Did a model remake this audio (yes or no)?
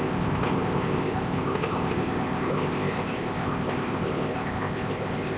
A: yes